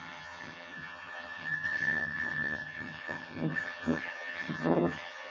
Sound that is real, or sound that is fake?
fake